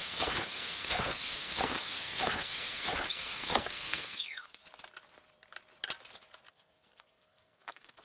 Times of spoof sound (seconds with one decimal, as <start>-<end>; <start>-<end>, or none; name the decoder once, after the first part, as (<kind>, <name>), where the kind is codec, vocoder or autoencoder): 0.0-4.6 (codec, SNAC); 6.5-8.0